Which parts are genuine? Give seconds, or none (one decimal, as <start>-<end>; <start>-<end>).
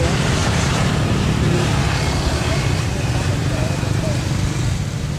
0.0-0.4; 1.8-3.4; 4.2-5.2